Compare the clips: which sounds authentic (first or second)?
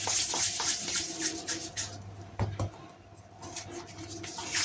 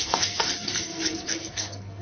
first